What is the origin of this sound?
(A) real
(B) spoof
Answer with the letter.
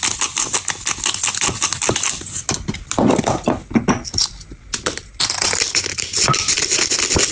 A